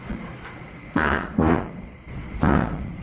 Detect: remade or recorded remade